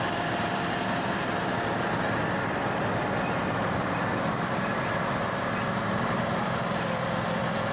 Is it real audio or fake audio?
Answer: real